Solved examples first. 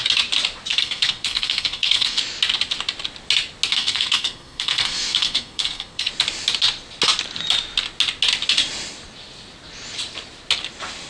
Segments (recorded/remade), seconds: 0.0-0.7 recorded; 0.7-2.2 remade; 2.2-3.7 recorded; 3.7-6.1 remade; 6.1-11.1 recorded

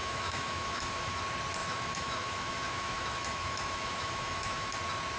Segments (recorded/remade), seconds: 0.0-1.2 remade; 1.2-1.6 recorded; 1.6-4.7 remade; 4.7-5.2 recorded

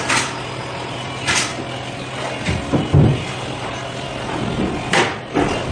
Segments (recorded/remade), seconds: 0.0-5.7 recorded

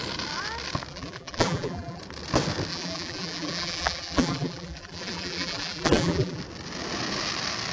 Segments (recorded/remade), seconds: 0.0-0.9 recorded; 0.9-2.0 remade; 2.0-2.7 recorded; 2.7-6.4 remade; 6.4-7.7 recorded

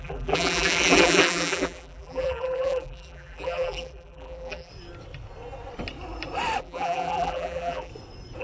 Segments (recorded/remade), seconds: 0.0-4.7 remade; 4.7-6.6 recorded; 6.6-7.9 remade; 7.9-8.4 recorded

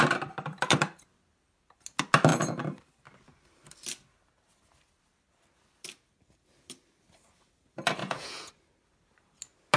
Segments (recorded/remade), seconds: 0.0-8.0 recorded; 8.0-8.5 remade; 8.5-9.8 recorded